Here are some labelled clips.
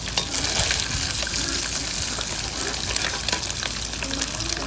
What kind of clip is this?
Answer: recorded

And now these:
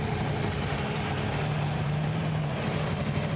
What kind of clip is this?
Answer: remade